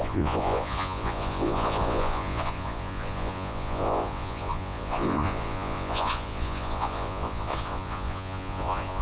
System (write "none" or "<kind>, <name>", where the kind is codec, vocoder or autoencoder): vocoder, Vocos